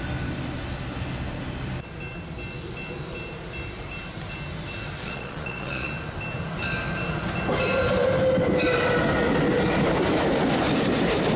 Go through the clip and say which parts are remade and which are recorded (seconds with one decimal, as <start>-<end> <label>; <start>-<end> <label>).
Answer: 0.0-5.0 recorded; 5.0-5.9 remade; 5.9-11.4 recorded